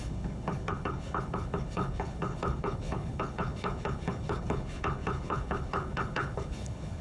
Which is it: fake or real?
fake